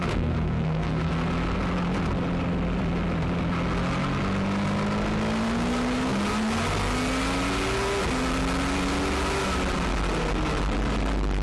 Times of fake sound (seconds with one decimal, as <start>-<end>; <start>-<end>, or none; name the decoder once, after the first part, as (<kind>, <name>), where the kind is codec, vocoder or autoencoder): 0.0-1.1 (codec, SNAC)